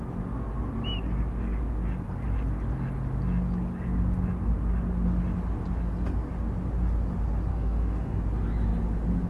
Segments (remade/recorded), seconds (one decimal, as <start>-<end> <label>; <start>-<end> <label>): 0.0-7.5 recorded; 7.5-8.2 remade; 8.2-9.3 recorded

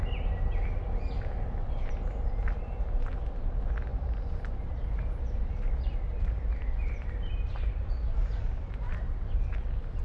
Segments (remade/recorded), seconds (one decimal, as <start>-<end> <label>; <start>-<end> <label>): 0.0-1.6 recorded; 1.6-2.7 remade; 2.7-3.9 recorded; 3.9-8.9 remade; 8.9-10.0 recorded

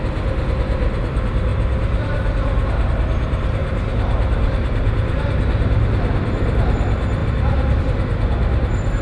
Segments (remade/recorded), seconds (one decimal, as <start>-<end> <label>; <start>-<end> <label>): 0.0-3.6 recorded; 3.6-5.5 remade; 5.5-7.2 recorded; 7.2-7.8 remade; 7.8-9.0 recorded

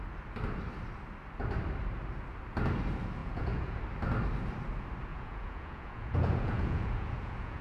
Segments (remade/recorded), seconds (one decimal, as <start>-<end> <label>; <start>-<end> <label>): 0.0-3.2 recorded; 3.2-3.8 remade; 3.8-5.1 recorded; 5.1-7.6 remade

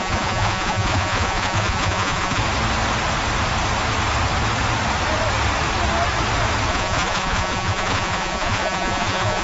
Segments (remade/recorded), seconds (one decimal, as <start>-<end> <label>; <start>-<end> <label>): 0.0-2.4 remade; 2.4-6.7 recorded; 6.7-9.4 remade